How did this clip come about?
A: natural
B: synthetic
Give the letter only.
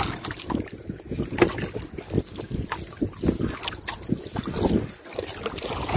A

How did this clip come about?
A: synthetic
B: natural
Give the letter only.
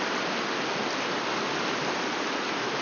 B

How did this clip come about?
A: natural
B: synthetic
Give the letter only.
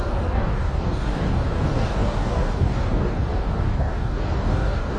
B